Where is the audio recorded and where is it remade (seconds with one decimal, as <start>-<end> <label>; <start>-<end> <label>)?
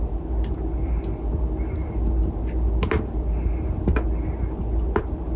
0.0-5.4 recorded